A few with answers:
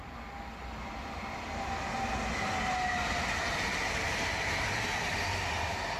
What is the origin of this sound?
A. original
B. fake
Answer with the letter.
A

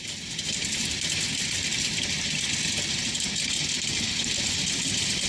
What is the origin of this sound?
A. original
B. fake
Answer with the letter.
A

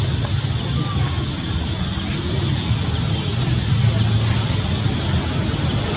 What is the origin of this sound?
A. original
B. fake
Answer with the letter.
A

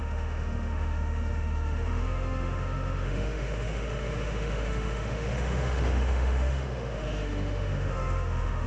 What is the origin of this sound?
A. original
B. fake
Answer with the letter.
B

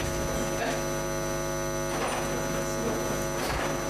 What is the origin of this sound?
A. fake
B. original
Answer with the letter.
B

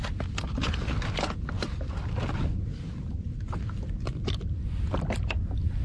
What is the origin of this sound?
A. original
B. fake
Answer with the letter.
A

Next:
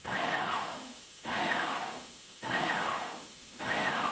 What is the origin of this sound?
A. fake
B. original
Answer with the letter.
A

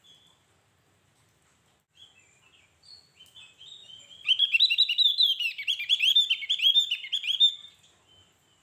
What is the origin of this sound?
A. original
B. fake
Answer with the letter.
A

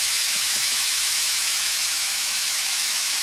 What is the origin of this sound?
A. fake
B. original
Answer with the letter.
A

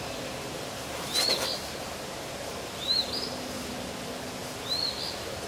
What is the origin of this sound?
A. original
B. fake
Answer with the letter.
A